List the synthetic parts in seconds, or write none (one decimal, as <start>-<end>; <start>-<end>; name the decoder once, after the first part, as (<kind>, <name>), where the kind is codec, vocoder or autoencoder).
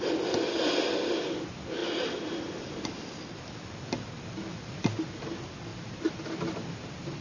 none